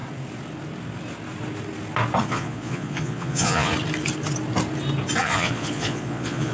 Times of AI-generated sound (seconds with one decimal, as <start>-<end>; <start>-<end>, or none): 2.2-3.7; 5.2-6.5